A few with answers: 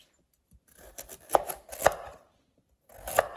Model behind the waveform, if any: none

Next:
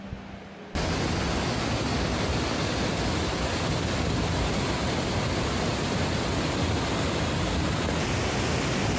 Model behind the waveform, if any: none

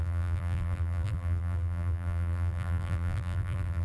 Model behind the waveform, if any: vocoder, BigVGAN v2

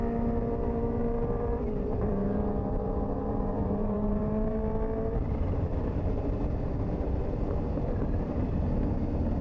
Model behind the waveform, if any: vocoder, BigVGAN v2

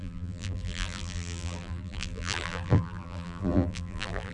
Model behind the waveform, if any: vocoder, BigVGAN v2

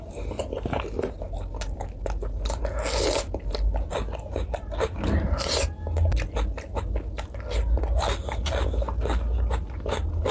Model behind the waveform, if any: none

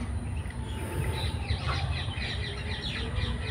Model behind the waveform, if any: none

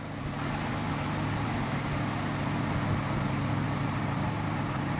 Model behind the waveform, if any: none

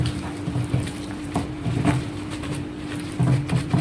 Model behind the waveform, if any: vocoder, BigVGAN v2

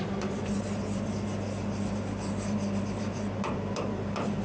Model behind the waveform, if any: vocoder, BigVGAN v2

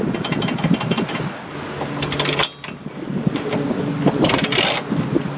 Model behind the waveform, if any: none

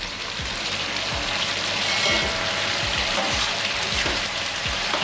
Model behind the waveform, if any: vocoder, BigVGAN v2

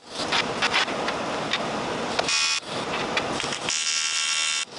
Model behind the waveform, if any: none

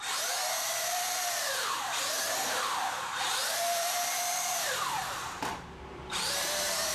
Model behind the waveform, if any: vocoder, BigVGAN v2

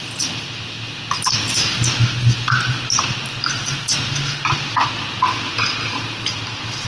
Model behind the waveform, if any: none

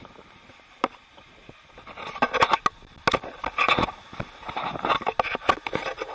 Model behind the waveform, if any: none